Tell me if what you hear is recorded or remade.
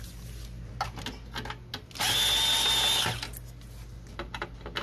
recorded